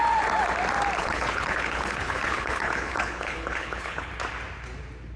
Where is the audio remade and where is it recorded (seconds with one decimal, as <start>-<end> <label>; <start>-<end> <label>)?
0.0-1.0 recorded; 1.0-4.1 remade; 4.1-5.2 recorded